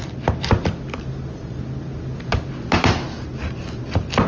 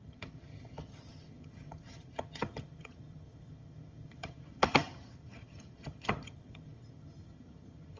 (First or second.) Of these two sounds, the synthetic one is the second